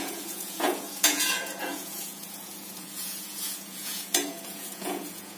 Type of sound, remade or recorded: remade